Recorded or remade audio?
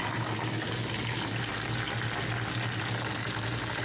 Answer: recorded